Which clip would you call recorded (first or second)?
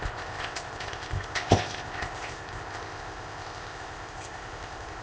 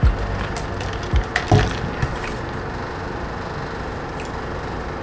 second